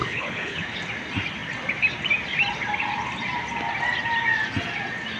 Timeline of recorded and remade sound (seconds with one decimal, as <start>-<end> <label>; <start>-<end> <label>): 0.0-0.8 remade; 0.8-5.2 recorded